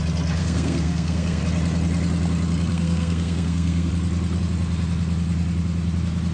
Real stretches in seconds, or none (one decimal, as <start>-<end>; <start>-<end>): 0.0-0.4; 1.4-2.7; 3.9-6.3